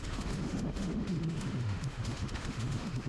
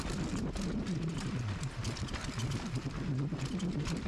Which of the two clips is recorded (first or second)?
second